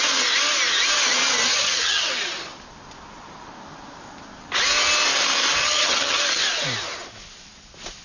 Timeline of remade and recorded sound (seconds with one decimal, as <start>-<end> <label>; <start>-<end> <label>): 0.0-1.5 recorded; 1.5-2.1 remade; 2.1-5.6 recorded; 5.6-6.2 remade; 6.2-8.0 recorded